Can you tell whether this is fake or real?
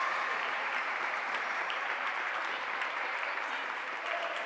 fake